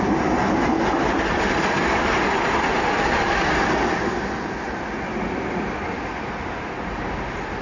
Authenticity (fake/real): real